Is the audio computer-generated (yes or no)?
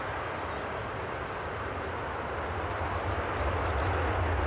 no